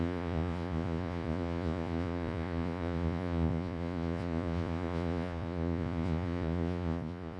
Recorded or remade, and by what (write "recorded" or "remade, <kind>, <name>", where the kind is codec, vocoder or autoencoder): remade, vocoder, Vocos